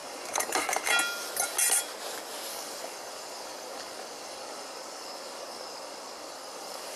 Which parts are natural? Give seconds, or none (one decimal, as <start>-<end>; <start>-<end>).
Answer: 0.9-2.5